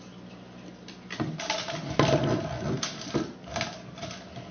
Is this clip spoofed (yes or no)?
no